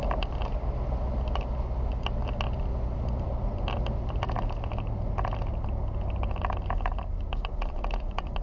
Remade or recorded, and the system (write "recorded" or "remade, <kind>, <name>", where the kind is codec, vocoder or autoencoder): recorded